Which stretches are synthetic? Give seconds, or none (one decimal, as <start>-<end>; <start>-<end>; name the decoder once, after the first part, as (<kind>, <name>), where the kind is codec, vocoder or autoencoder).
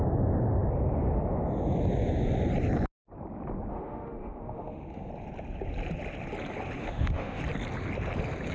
3.7-5.1 (autoencoder, DAC-VAE); 6.8-7.4